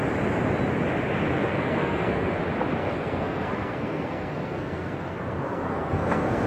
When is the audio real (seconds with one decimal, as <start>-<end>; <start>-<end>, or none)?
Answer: 0.0-1.3; 2.4-2.8